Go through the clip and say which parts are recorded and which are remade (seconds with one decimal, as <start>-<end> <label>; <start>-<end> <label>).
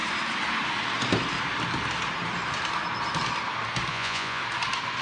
0.0-3.9 recorded; 3.9-4.4 remade; 4.4-5.0 recorded